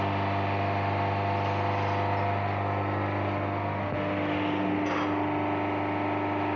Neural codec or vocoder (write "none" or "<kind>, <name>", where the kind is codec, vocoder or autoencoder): none